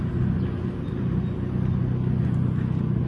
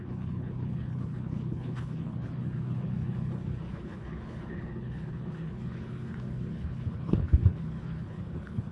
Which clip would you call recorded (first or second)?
first